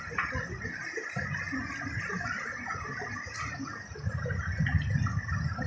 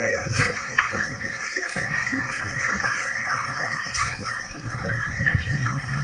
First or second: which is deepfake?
second